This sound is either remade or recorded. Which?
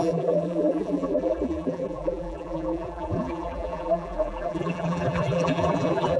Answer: remade